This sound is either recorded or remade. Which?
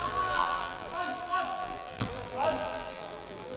remade